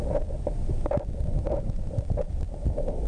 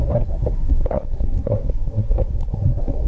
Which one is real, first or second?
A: first